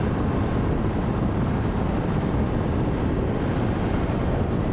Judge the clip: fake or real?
real